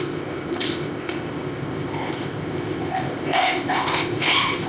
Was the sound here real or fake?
fake